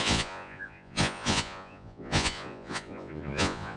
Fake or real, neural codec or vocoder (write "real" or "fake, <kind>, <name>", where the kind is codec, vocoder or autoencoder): fake, vocoder, Vocos